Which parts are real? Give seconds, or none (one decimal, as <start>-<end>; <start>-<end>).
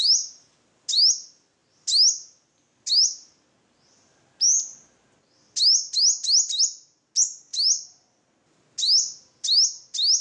0.0-10.2